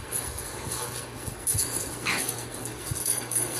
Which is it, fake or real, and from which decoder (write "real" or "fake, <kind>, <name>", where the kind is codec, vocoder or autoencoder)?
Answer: fake, codec, SNAC